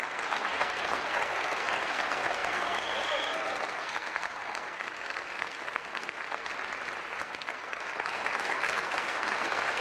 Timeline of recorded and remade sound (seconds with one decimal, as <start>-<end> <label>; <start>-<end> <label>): 0.0-6.5 remade; 6.5-7.2 recorded; 7.2-9.8 remade